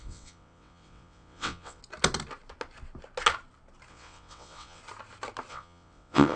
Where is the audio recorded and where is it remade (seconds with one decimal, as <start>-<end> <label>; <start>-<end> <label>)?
0.0-1.8 remade; 1.8-3.9 recorded; 3.9-4.8 remade; 4.8-5.5 recorded; 5.5-6.4 remade